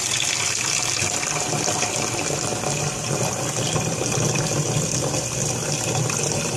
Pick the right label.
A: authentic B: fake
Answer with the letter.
A